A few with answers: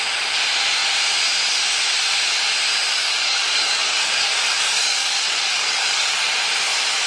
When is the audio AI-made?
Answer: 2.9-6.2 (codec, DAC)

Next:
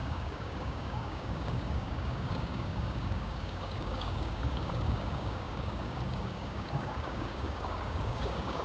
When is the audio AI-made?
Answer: 0.0-8.6 (codec, DAC)